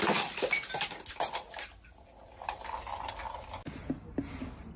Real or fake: real